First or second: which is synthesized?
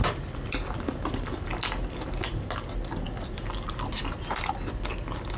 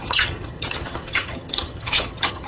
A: second